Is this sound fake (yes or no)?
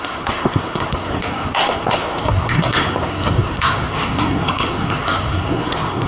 yes